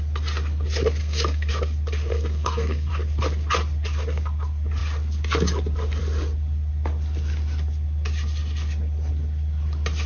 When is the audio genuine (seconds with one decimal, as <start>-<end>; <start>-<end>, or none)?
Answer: 0.0-1.0; 1.5-2.1; 2.9-10.1